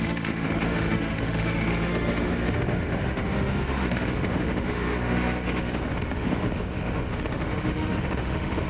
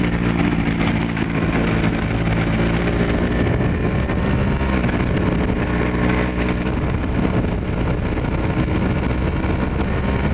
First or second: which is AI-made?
first